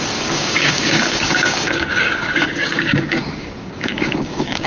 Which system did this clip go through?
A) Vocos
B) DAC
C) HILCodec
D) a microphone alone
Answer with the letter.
B